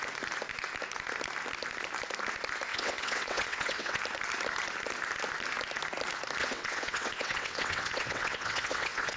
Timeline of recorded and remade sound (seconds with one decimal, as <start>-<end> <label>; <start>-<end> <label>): 0.0-2.7 recorded; 2.7-4.0 remade; 4.0-6.4 recorded; 6.4-9.2 remade